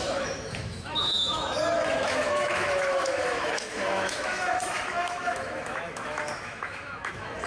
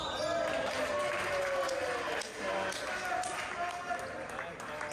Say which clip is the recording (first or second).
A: second